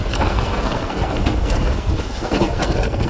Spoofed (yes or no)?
yes